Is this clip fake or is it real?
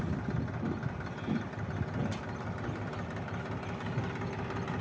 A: real